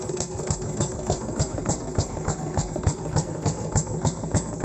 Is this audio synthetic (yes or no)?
yes